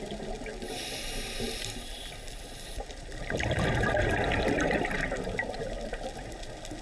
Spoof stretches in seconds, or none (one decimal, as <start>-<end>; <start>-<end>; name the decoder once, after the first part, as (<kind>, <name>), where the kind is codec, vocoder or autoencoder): none